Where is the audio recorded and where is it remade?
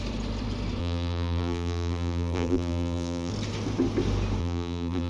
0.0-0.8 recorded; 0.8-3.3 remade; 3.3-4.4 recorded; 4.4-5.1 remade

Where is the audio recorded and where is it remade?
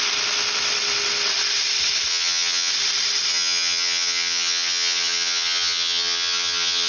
0.0-2.1 recorded; 2.1-2.7 remade; 2.7-3.3 recorded; 3.3-6.9 remade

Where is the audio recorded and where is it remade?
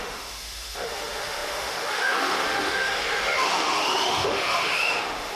0.0-5.4 remade